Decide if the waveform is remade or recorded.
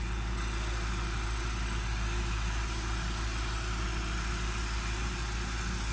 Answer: recorded